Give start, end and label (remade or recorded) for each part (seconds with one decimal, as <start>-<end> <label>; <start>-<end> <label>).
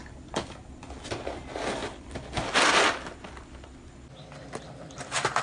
0.0-5.4 recorded